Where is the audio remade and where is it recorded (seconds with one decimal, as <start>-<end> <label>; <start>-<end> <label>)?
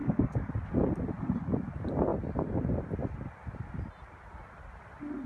0.0-0.5 remade; 0.5-5.3 recorded